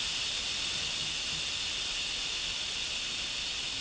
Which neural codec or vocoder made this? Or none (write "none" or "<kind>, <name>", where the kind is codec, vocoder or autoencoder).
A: none